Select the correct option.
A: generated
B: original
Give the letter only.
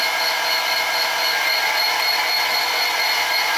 B